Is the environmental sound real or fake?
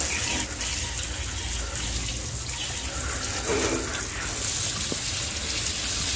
real